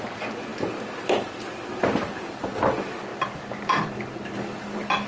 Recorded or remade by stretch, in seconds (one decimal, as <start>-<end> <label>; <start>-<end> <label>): 0.0-5.1 recorded